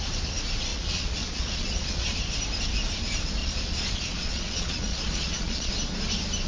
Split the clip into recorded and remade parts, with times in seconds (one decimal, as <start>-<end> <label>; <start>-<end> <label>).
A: 0.0-0.7 recorded; 0.7-2.2 remade; 2.2-3.4 recorded; 3.4-5.7 remade; 5.7-6.5 recorded